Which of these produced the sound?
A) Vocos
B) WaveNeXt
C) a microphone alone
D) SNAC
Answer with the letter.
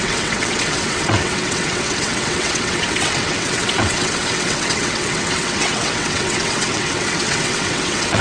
B